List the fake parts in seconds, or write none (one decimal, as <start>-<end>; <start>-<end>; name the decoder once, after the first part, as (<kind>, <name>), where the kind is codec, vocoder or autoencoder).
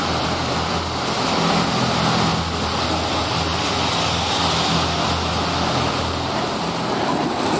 none